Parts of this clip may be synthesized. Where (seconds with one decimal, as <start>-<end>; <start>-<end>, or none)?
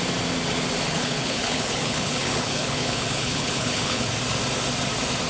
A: 0.9-4.1